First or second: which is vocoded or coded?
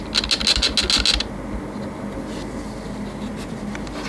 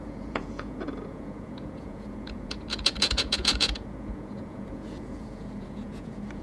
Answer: second